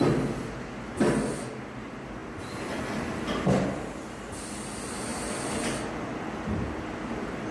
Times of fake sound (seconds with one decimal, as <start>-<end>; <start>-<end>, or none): none